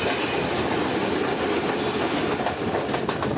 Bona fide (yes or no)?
yes